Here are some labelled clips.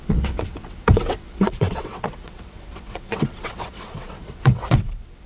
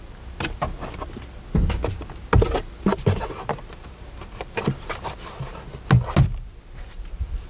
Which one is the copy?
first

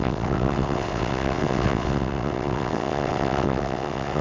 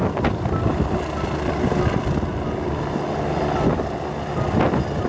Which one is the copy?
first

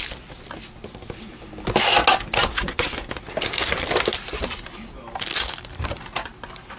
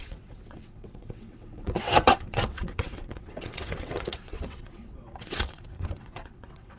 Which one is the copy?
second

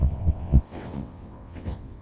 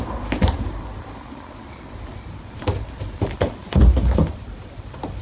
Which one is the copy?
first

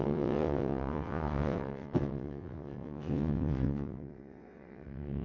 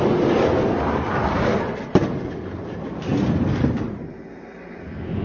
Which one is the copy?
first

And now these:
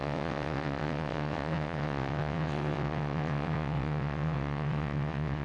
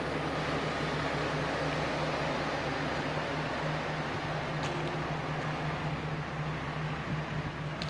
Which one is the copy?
first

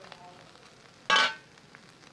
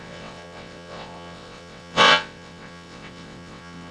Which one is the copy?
second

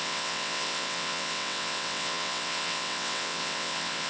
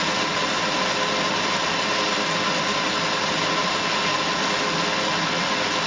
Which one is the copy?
first